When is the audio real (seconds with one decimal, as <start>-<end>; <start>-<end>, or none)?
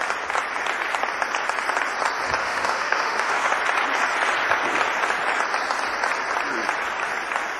0.0-2.4; 3.5-7.6